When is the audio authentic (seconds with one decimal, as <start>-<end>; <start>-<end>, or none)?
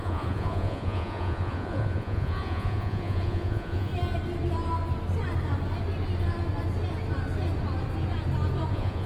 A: 3.9-8.7